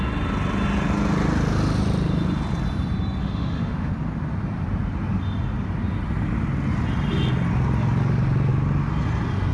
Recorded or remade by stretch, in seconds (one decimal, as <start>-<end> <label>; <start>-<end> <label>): 0.0-3.2 recorded; 3.2-3.9 remade; 3.9-9.5 recorded